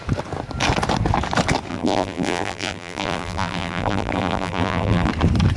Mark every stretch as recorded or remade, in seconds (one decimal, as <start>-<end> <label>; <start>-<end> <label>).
0.0-1.7 recorded; 1.7-5.1 remade; 5.1-5.6 recorded